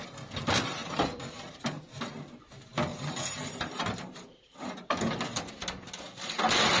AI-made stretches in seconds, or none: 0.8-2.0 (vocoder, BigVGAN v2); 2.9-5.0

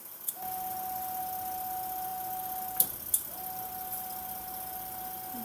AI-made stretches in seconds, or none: none

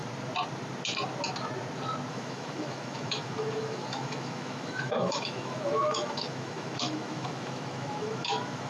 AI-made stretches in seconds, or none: 2.1-8.7 (autoencoder, DAC-VAE)

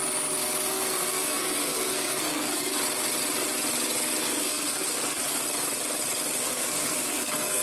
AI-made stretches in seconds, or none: 0.7-2.7 (codec, SNAC); 4.2-5.4; 6.4-7.6

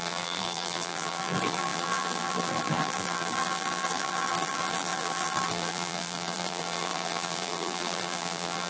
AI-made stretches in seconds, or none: 0.0-8.7 (vocoder, BigVGAN v2)

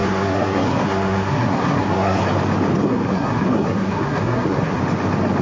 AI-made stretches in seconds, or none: 0.0-2.2 (codec, SNAC); 2.8-4.8

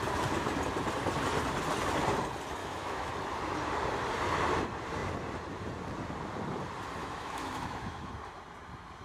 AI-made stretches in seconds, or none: 2.6-3.1 (autoencoder, DAC-VAE); 7.0-8.1